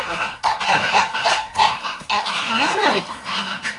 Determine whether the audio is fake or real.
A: fake